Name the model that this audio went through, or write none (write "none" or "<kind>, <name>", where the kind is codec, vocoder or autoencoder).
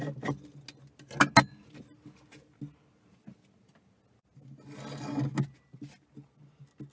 none